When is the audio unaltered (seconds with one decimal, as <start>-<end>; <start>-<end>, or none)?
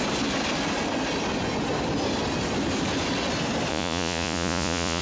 0.0-3.7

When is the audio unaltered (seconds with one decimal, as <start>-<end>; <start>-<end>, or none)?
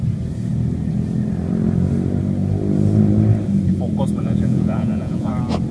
0.0-4.2; 5.3-5.7